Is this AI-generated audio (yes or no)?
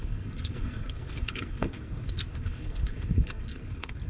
yes